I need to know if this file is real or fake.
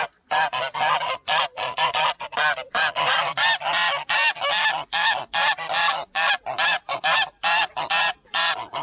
real